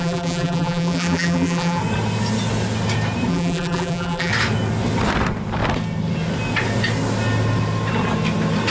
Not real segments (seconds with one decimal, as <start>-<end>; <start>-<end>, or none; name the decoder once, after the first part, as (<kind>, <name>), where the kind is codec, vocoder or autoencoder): 0.0-1.8 (vocoder, BigVGAN v2); 3.3-4.3